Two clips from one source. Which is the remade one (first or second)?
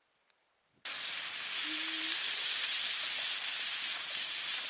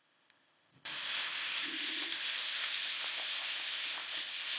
second